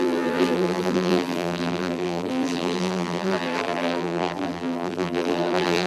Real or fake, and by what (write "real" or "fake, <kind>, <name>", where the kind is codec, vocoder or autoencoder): fake, vocoder, BigVGAN v2